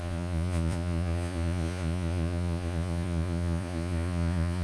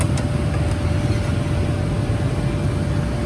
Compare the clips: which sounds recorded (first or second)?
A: second